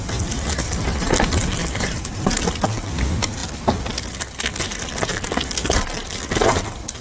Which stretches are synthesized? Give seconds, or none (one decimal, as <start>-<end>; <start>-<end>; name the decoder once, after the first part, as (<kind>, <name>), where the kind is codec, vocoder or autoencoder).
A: 1.6-2.2 (vocoder, BigVGAN v2)